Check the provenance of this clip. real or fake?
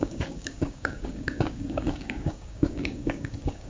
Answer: fake